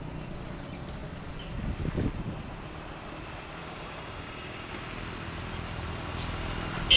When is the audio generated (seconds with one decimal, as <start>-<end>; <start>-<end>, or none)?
3.6-4.7